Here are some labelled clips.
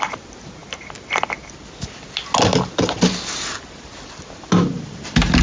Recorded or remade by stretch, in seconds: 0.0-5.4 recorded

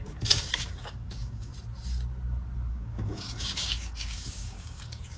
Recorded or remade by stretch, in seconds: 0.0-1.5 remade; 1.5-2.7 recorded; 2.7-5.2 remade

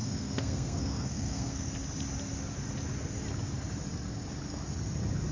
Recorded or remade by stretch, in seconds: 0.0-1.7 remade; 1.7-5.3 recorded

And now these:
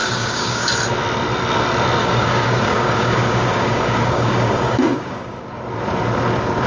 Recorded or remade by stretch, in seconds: 0.0-0.7 remade; 0.7-2.0 recorded; 2.0-5.5 remade; 5.5-6.7 recorded

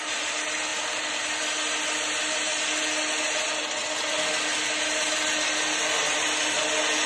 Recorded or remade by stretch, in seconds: 0.0-7.1 recorded

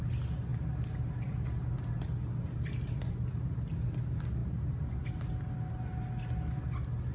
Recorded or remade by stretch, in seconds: 0.0-7.1 recorded

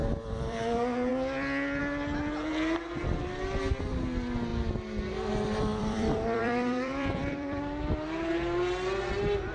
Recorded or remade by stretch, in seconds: 0.0-0.6 remade; 0.6-5.7 recorded; 5.7-7.6 remade; 7.6-9.5 recorded